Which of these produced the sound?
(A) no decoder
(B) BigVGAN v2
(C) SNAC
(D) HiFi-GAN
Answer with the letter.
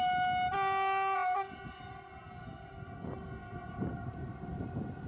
A